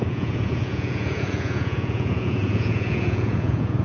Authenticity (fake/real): fake